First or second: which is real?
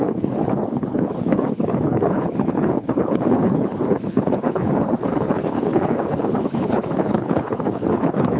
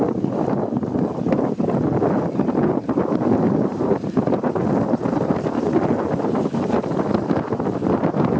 second